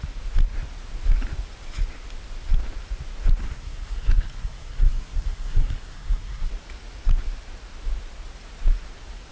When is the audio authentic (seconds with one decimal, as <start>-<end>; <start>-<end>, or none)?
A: 0.0-3.4; 6.5-9.3